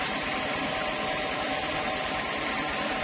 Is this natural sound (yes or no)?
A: yes